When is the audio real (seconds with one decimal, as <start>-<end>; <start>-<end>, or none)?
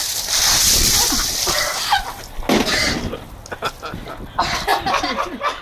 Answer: 0.0-4.7